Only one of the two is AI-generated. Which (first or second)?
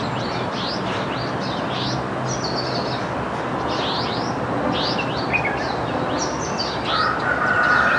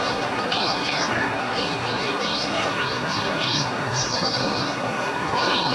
second